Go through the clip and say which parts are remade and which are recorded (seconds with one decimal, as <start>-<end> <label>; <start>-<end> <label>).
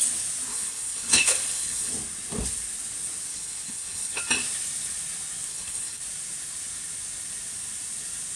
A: 0.0-0.5 recorded; 0.5-1.9 remade; 1.9-3.3 recorded; 3.3-4.2 remade; 4.2-5.5 recorded; 5.5-6.0 remade; 6.0-8.4 recorded